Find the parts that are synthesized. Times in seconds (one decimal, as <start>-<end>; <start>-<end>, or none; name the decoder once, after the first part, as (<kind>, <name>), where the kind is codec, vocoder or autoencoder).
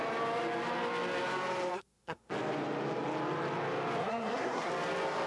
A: 1.7-2.3 (codec, SNAC); 4.0-4.7